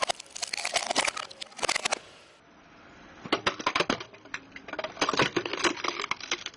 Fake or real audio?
real